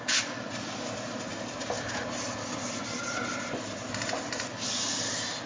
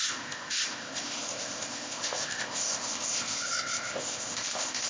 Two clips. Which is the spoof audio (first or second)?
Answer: second